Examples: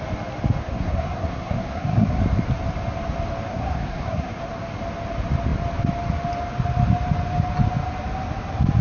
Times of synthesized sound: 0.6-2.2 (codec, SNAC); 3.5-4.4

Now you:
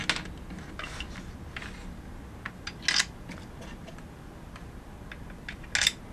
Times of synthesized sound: none

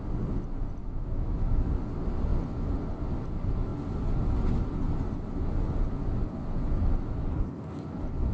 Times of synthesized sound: 0.8-1.7 (autoencoder, DAC-VAE)

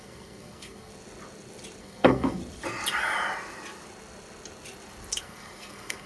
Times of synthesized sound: 0.0-0.9 (codec, SNAC); 1.8-2.4; 5.2-6.1